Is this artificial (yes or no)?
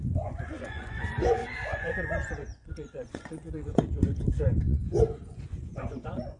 yes